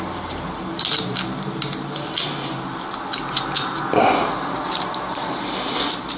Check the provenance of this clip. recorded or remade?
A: recorded